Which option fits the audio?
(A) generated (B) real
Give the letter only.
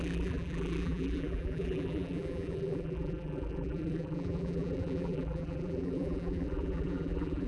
A